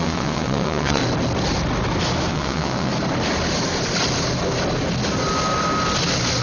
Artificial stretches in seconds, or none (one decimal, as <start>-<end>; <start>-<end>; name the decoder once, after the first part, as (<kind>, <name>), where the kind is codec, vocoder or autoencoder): 0.0-1.0 (vocoder, WaveNeXt); 2.3-2.9